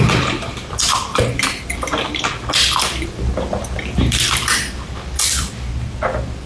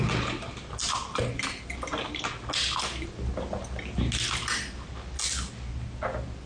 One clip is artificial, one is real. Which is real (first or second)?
second